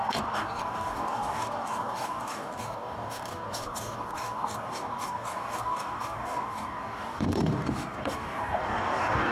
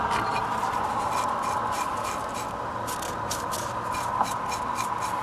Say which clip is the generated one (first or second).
first